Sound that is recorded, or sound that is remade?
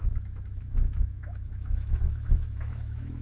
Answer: remade